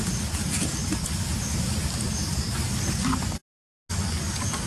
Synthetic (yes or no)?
no